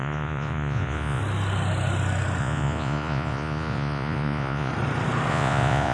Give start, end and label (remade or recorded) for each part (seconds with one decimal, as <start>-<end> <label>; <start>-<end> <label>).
0.0-1.2 remade; 1.2-2.4 recorded; 2.4-4.7 remade; 4.7-5.3 recorded; 5.3-5.9 remade